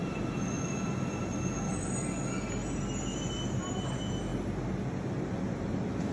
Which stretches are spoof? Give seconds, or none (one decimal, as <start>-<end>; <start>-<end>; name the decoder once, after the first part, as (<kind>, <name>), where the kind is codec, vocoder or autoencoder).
none